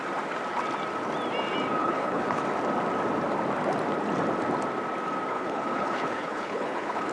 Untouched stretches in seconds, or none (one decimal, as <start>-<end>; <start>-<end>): 0.0-1.8; 2.4-5.3